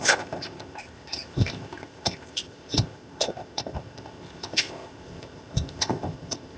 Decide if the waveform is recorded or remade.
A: remade